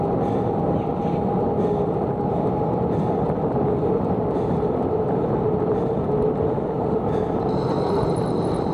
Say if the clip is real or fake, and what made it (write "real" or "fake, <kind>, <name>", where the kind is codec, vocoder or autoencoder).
real